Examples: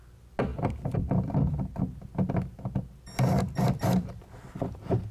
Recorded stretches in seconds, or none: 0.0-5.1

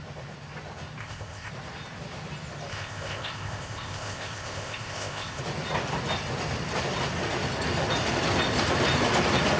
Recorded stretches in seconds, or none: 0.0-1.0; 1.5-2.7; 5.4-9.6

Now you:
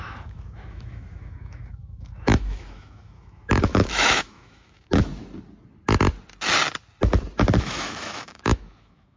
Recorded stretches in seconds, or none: 5.1-7.6

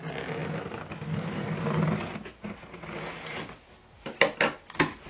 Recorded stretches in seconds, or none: 0.0-5.1

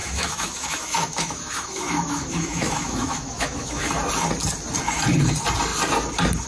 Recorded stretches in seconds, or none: 3.9-6.5

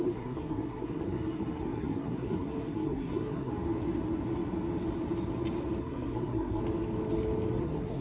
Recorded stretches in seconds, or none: 3.5-5.8; 6.6-7.6

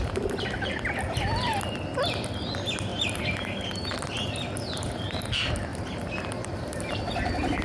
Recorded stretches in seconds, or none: 0.0-2.9; 5.2-5.7; 7.0-7.6

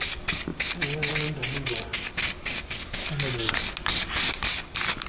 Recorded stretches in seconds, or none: 0.0-5.1